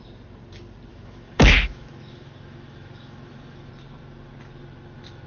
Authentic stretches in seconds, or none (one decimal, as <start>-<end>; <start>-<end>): 0.0-0.9; 3.7-5.3